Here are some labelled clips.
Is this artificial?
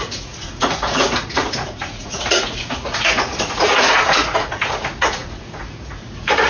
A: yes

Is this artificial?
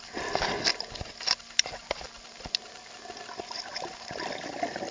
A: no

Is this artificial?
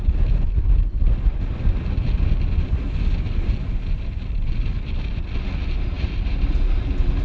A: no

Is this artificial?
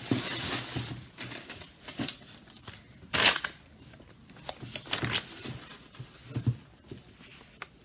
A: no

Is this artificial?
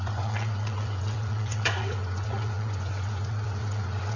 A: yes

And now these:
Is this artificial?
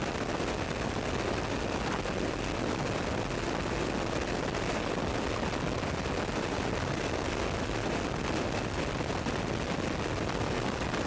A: no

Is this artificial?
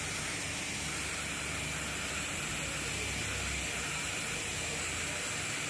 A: yes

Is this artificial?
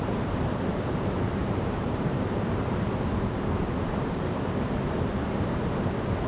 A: yes